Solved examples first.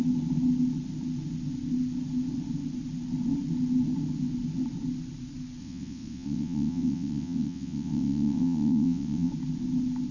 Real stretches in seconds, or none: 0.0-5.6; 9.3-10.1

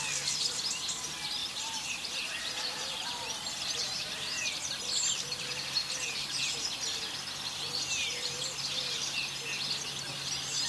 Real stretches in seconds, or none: 0.0-1.4; 4.8-10.7

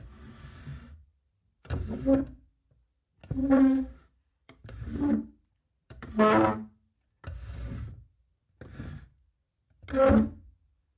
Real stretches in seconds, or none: 0.0-0.7; 2.0-3.4; 6.1-11.0

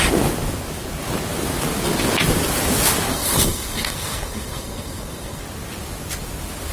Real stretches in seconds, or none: 0.0-3.1; 5.4-6.7